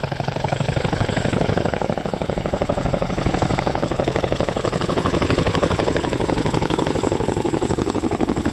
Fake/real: fake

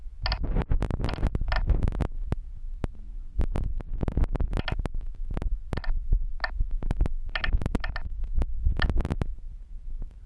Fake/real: real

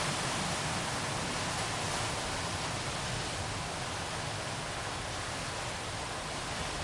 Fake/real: real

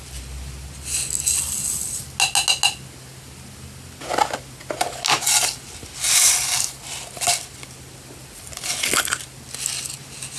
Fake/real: real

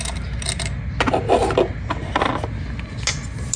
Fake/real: real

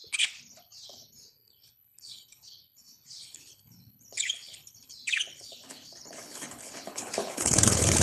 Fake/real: fake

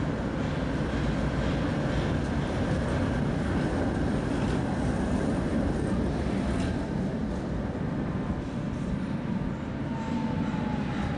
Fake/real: real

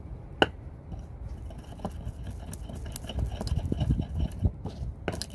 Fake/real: real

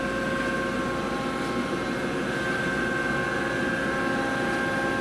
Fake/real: real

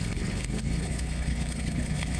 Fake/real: fake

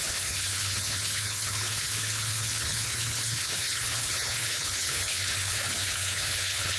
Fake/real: fake